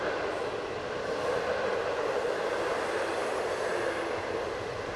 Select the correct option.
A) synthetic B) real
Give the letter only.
B